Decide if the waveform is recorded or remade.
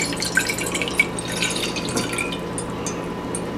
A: recorded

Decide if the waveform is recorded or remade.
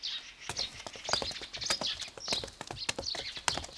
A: recorded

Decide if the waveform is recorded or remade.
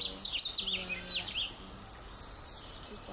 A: recorded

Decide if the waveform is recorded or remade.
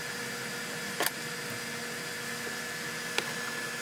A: recorded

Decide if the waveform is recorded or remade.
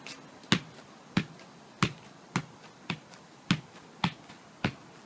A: recorded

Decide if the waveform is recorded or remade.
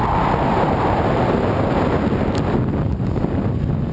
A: recorded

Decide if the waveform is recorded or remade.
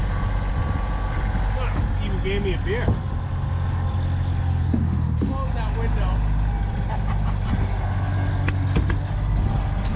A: recorded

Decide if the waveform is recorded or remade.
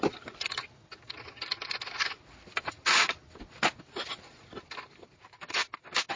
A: recorded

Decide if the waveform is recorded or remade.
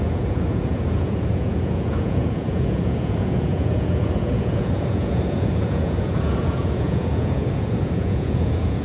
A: remade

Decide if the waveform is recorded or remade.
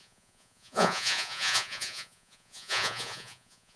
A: remade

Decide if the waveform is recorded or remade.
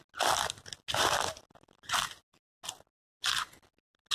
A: recorded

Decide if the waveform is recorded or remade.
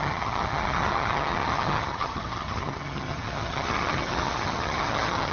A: remade